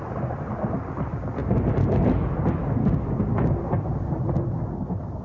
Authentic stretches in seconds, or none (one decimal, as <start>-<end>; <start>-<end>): 0.0-5.2